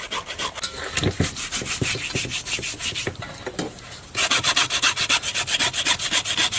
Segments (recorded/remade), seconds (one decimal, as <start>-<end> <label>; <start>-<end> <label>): 0.0-6.6 recorded

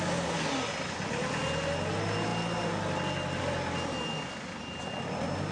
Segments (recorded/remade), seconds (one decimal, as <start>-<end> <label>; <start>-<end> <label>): 0.0-5.5 recorded